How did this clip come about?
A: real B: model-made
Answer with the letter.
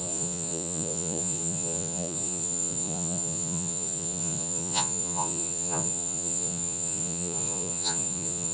B